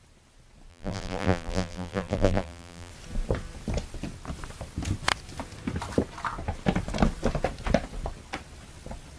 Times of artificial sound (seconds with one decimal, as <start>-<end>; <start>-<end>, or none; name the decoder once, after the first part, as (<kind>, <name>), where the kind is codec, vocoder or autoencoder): 0.7-2.9 (vocoder, BigVGAN v2)

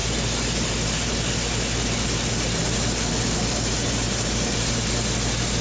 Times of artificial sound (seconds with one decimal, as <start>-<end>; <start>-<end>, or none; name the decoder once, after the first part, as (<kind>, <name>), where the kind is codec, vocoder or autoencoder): none

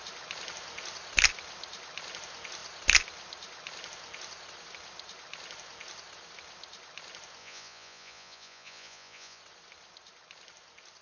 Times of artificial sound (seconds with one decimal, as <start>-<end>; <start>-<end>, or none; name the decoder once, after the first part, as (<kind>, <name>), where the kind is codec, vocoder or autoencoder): 7.4-9.4 (vocoder, Vocos)